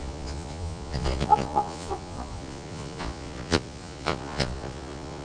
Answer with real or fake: fake